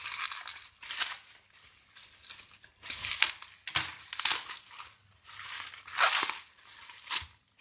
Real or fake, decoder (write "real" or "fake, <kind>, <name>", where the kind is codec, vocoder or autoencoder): real